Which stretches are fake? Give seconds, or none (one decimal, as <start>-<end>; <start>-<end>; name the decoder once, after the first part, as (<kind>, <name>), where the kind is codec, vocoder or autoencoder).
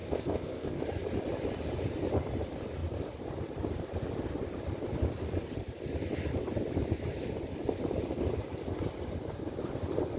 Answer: 0.0-0.8 (codec, ZipCodec)